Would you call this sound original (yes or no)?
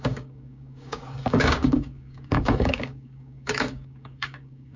no